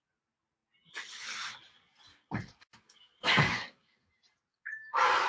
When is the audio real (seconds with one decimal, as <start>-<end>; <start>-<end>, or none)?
0.0-2.1; 4.1-4.5

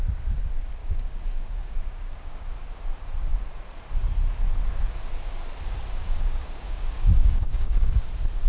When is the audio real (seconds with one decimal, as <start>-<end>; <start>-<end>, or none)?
0.0-0.8; 2.5-6.0; 8.1-8.5